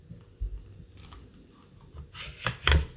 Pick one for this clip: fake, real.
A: real